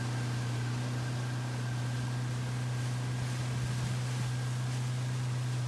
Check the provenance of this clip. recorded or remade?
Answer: recorded